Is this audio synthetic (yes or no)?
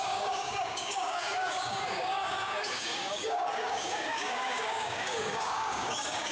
yes